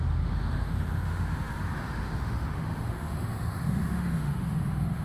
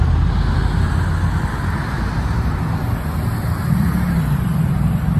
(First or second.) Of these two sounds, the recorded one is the second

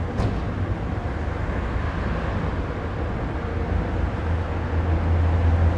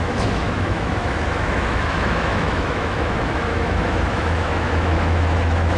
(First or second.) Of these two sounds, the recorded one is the first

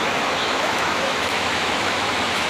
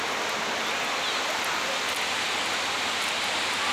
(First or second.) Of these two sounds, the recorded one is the second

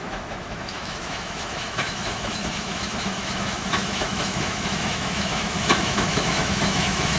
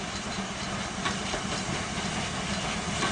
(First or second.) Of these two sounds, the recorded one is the second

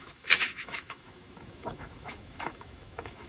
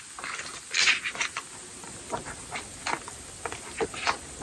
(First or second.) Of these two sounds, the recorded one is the second